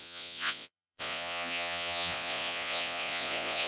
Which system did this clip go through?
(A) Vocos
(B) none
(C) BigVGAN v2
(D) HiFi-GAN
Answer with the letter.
A